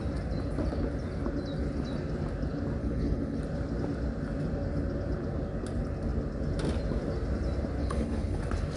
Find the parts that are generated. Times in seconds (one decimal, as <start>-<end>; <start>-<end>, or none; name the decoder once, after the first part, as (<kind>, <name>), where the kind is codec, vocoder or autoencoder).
2.8-3.4 (codec, HILCodec); 7.8-8.4